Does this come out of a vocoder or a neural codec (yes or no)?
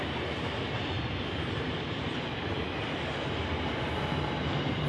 no